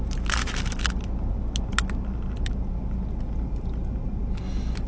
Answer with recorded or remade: recorded